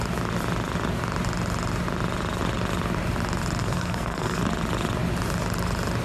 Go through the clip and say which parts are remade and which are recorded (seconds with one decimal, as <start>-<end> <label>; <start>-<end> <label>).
0.0-3.6 recorded; 3.6-4.4 remade; 4.4-6.0 recorded